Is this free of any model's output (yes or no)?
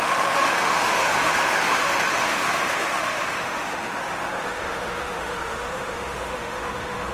no